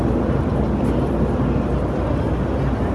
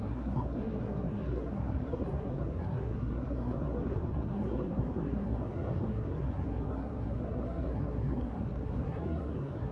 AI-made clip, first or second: second